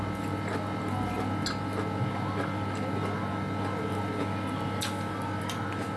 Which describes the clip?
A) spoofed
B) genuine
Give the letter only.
B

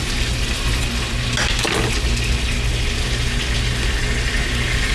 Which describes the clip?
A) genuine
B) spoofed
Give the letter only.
A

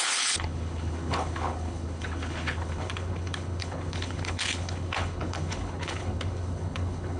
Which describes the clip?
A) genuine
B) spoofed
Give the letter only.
B